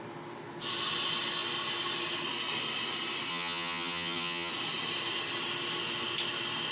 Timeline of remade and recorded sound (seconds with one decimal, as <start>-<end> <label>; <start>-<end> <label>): 0.0-3.3 recorded; 3.3-4.5 remade; 4.5-6.7 recorded